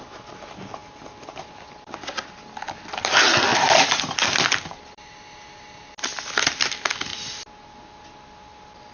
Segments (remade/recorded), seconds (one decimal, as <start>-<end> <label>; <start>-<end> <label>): 0.0-8.9 recorded